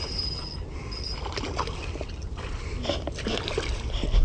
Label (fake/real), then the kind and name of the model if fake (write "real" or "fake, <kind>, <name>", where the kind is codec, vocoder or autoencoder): real